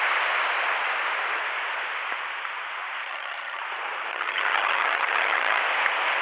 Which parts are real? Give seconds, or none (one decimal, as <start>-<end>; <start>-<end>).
0.0-3.0; 3.6-4.1; 5.6-6.2